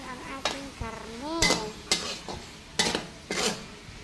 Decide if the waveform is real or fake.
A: real